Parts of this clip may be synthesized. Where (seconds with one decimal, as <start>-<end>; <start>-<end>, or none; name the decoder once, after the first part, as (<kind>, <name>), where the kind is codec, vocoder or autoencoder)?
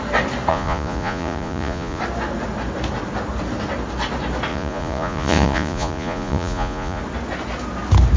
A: 0.5-2.0 (vocoder, Vocos); 4.5-7.0